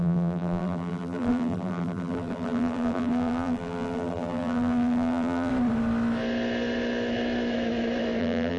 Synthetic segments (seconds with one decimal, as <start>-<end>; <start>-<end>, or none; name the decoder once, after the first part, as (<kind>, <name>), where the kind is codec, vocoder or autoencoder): 0.0-5.5 (vocoder, BigVGAN v2); 8.2-8.6